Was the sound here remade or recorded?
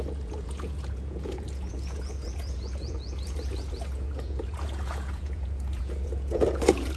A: remade